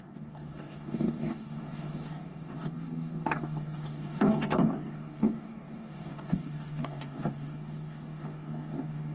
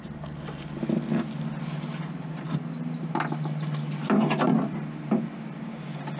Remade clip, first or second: first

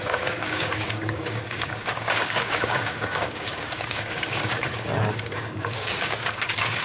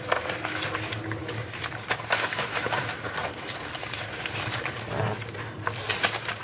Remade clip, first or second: first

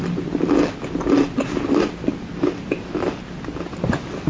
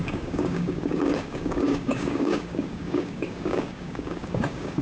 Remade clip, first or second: second